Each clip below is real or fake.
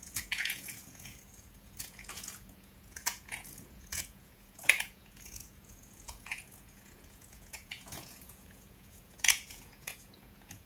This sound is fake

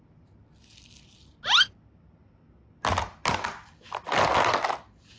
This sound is real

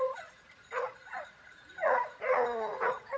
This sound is fake